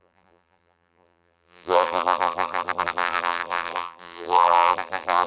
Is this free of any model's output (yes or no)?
no